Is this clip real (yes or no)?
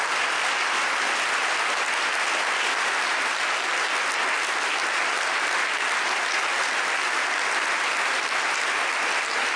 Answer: yes